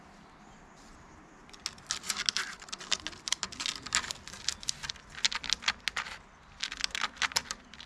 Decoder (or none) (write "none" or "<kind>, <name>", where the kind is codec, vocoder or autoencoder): none